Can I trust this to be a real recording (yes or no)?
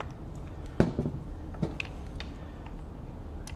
yes